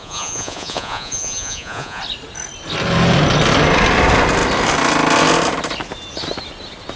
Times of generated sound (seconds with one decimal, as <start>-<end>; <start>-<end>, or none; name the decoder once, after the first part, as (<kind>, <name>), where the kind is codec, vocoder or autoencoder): 0.0-2.0 (vocoder, Vocos)